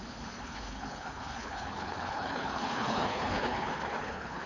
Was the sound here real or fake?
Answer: fake